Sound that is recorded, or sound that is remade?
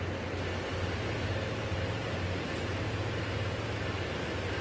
recorded